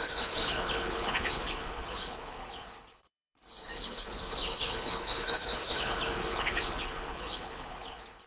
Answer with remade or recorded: remade